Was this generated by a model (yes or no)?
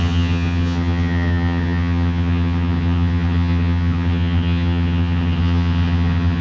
yes